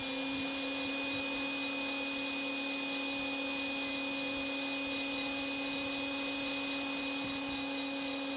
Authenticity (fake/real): real